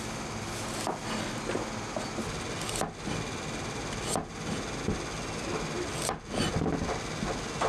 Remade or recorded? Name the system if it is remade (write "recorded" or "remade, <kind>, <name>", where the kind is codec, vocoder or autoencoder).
recorded